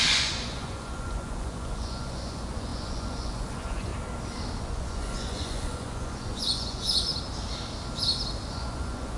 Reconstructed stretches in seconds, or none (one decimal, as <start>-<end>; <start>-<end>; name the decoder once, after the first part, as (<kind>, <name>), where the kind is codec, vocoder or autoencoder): 0.0-3.9 (vocoder, Vocos); 4.6-7.1; 8.5-9.2